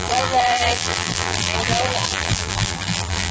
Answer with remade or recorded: remade